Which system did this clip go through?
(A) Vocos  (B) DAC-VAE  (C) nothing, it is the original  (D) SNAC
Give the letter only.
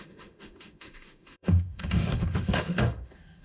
B